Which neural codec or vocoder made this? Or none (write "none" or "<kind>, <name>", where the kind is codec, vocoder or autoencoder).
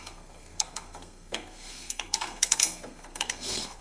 codec, SNAC